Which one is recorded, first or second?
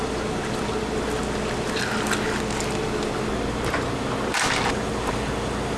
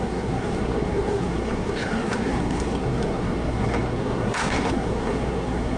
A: first